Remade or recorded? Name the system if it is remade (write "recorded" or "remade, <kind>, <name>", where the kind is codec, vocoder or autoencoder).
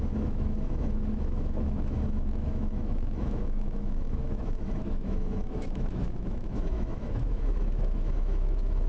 remade, autoencoder, DAC-VAE